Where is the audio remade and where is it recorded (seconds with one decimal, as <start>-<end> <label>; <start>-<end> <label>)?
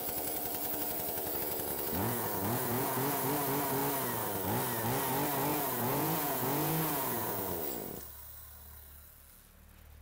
0.0-3.3 remade; 3.3-5.5 recorded; 5.5-7.5 remade; 7.5-10.0 recorded